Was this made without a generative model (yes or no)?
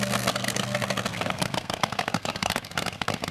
no